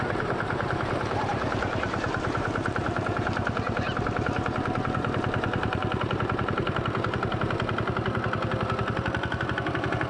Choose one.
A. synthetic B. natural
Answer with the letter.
A